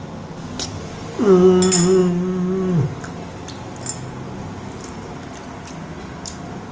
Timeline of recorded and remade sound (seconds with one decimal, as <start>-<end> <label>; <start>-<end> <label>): 0.0-6.7 recorded